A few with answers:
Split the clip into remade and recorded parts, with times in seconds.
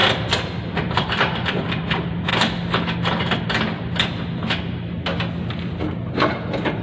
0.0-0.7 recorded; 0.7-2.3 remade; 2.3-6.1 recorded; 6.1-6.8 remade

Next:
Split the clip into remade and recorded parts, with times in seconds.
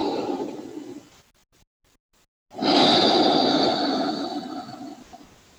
0.0-0.6 remade; 0.6-5.6 recorded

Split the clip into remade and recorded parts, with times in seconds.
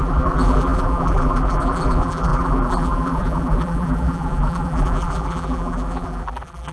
0.0-6.7 remade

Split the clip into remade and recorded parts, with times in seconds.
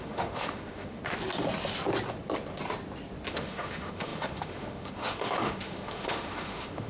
0.0-1.0 remade; 1.0-3.3 recorded; 3.3-6.9 remade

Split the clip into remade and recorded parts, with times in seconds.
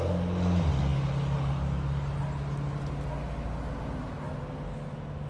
0.0-5.3 recorded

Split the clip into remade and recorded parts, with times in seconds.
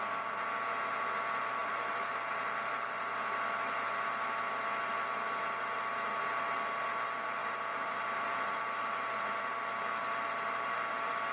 0.0-1.6 recorded; 1.6-2.1 remade; 2.1-7.4 recorded; 7.4-9.5 remade; 9.5-11.3 recorded